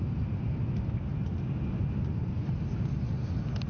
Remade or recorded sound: recorded